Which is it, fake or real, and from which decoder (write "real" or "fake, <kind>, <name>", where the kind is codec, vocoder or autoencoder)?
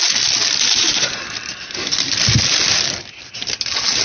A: real